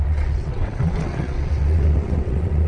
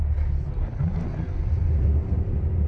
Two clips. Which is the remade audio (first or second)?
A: first